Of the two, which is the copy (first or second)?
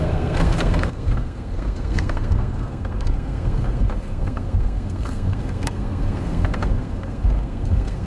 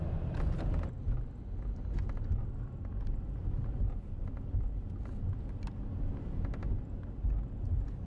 first